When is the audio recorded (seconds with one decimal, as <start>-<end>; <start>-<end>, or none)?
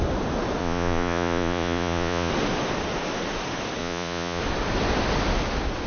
0.0-0.6; 2.3-3.8; 4.4-5.9